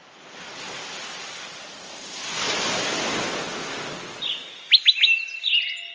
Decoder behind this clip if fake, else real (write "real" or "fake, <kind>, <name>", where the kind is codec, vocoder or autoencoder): real